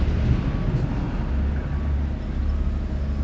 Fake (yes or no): no